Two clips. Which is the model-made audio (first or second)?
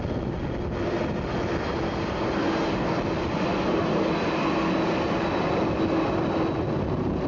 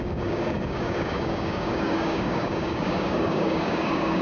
second